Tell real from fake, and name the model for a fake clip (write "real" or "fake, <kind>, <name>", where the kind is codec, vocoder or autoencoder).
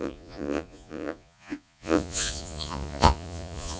fake, vocoder, Vocos